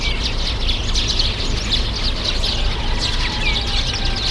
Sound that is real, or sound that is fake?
real